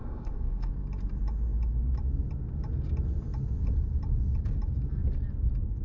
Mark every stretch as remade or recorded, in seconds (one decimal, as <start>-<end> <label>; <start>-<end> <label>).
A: 0.0-0.7 remade; 0.7-5.8 recorded